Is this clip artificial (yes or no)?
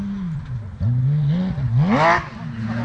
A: no